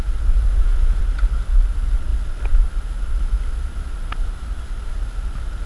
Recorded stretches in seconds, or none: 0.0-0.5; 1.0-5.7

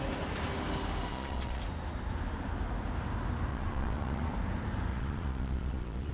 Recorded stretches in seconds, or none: 0.0-1.1; 1.6-3.5; 4.3-4.9

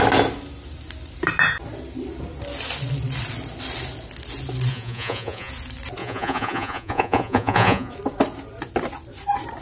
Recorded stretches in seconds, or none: 0.0-4.7; 5.5-6.0; 7.9-9.6

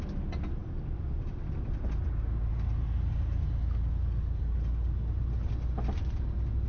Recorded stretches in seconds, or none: 0.0-6.7

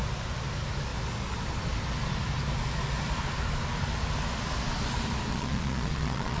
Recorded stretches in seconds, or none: 0.0-5.3

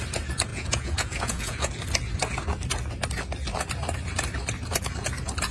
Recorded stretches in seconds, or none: 0.0-0.5; 1.7-5.5